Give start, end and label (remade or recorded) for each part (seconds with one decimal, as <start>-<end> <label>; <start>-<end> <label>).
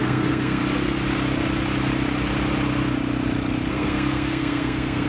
0.0-0.6 remade; 0.6-3.7 recorded; 3.7-5.1 remade